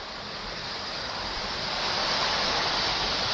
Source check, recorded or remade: recorded